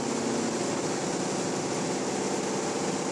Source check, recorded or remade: recorded